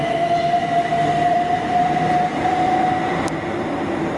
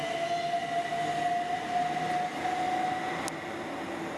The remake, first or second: first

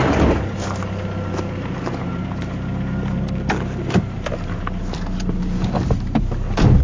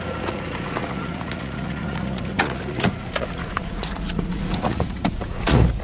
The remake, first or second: second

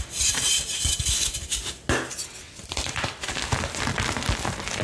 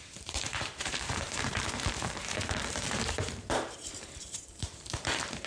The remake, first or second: second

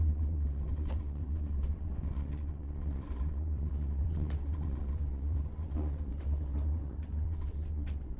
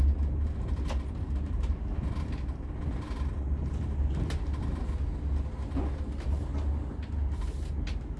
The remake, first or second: first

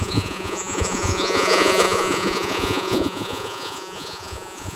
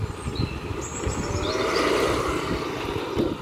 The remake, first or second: first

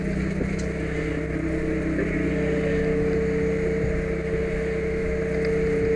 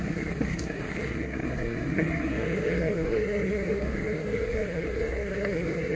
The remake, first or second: second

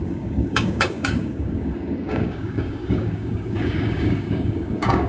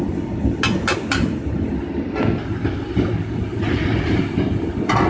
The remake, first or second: first